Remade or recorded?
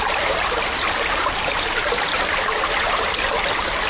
recorded